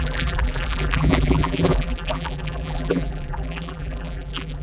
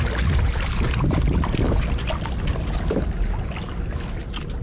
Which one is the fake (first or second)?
first